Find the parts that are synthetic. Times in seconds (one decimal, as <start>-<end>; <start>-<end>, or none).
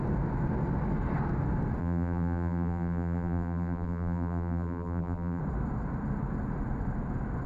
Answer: 1.8-5.4